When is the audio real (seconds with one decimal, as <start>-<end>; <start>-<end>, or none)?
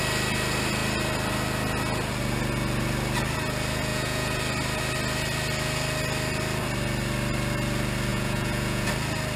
0.0-3.9; 4.4-8.1; 8.9-9.4